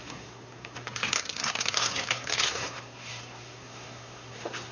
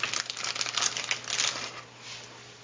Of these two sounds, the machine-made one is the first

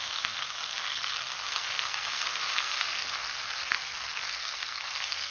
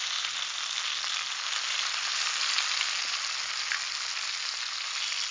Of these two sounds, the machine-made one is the first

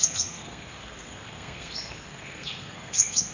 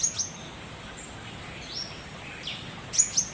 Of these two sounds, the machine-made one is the first